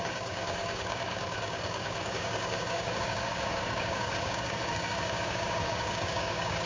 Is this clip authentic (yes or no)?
no